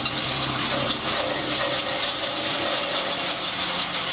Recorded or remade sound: remade